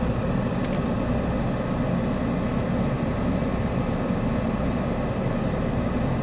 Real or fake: real